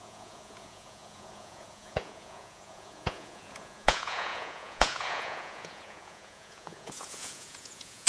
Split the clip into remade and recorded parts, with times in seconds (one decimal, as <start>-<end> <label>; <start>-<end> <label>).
0.0-8.1 remade